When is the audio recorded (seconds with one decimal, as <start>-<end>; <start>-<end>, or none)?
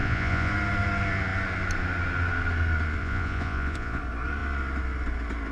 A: 0.5-3.0; 4.0-5.5